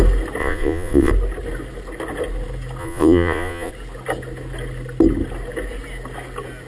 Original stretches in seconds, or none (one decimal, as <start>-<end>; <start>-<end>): 0.0-0.4; 1.1-2.8; 3.7-6.7